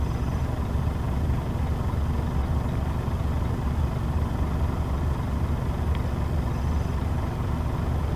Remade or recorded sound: recorded